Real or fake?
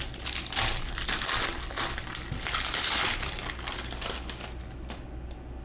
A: real